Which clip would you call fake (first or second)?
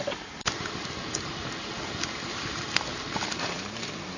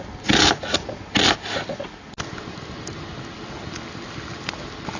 first